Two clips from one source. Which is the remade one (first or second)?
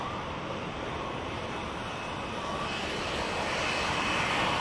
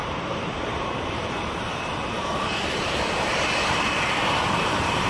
second